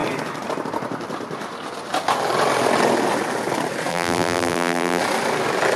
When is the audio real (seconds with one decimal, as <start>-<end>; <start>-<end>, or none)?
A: 0.0-3.9; 5.0-5.8